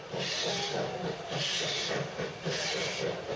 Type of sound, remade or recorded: recorded